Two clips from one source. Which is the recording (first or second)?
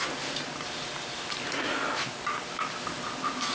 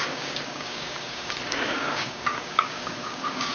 first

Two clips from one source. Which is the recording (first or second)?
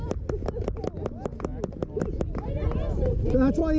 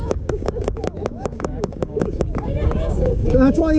first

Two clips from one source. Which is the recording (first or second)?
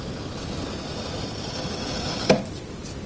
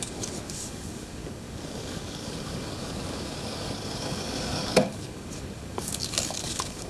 first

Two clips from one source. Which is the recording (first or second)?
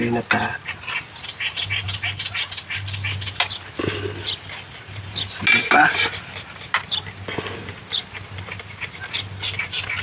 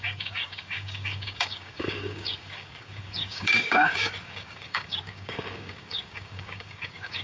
first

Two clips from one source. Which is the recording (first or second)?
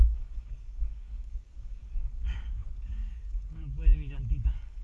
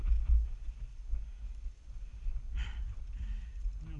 second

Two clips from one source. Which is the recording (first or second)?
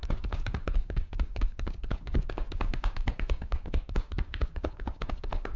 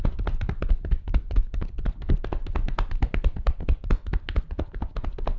second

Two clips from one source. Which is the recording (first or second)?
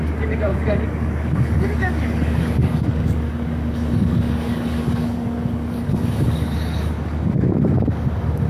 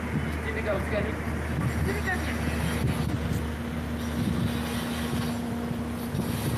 second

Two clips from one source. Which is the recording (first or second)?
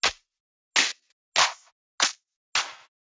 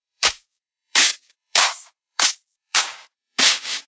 first